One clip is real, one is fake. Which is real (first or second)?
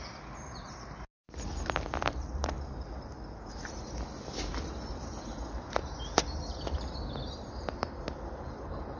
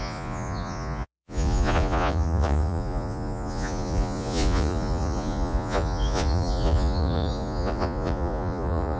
first